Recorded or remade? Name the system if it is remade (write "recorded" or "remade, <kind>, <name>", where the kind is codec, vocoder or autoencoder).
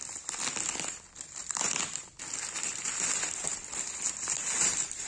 remade, vocoder, BigVGAN v2